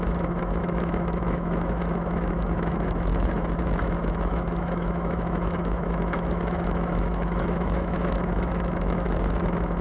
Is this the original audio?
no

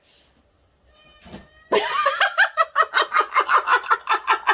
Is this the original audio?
yes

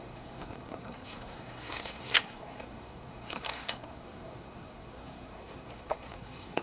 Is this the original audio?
no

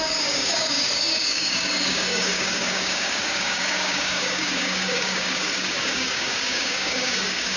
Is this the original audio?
no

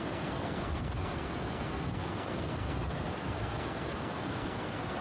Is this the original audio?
no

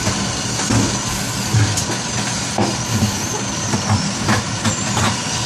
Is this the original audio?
yes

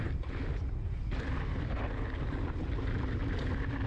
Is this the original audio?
yes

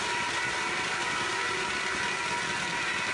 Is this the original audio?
yes